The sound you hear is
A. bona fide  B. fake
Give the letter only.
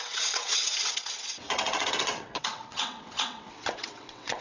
B